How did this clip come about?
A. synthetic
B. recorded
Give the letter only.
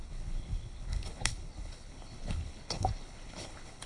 A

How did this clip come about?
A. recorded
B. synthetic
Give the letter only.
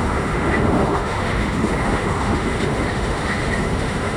B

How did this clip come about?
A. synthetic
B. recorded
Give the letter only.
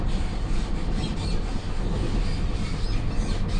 B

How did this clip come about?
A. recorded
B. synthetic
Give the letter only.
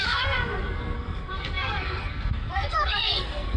B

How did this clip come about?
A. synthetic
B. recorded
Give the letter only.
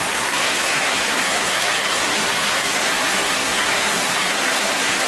A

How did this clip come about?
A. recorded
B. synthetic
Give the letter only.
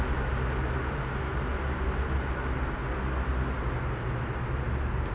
A